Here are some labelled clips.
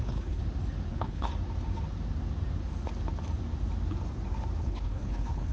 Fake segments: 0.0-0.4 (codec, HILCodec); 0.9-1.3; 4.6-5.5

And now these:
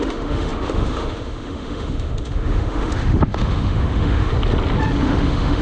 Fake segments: 0.0-4.3 (autoencoder, DAC-VAE); 5.0-5.6

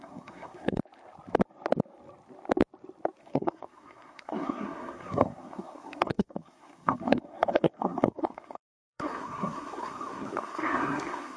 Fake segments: 0.0-0.8 (codec, SNAC); 3.2-11.4

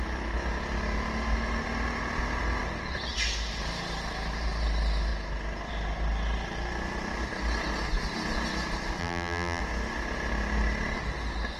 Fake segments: 9.0-9.6 (vocoder, BigVGAN v2)

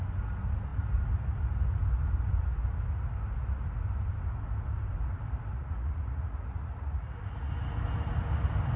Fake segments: 5.5-7.5 (vocoder, Vocos)